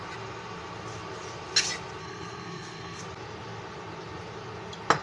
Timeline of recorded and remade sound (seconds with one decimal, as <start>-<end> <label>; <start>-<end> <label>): 0.0-2.0 recorded; 2.0-3.0 remade; 3.0-5.0 recorded